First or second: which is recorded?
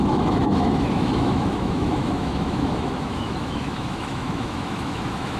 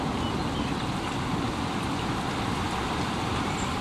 second